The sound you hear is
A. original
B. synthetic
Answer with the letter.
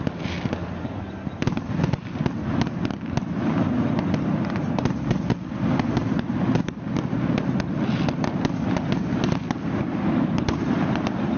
A